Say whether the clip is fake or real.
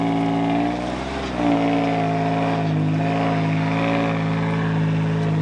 real